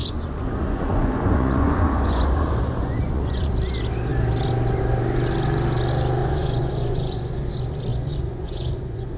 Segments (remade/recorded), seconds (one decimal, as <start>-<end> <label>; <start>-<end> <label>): 0.0-3.5 remade; 3.5-6.2 recorded; 6.2-7.5 remade; 7.5-7.9 recorded; 7.9-9.2 remade